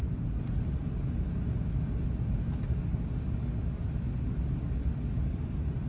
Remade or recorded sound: recorded